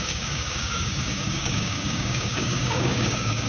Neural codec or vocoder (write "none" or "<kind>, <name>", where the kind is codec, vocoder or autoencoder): codec, DAC